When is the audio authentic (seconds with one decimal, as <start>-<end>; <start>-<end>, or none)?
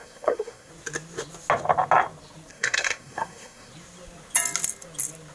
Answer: 0.7-2.5; 3.7-5.3